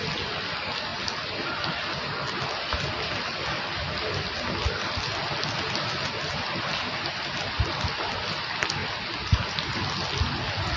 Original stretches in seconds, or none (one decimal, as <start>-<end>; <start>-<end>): 0.0-10.8